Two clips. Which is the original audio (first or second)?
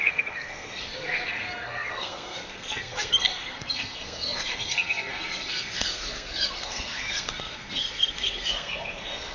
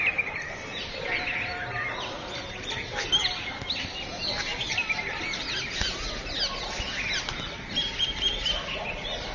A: second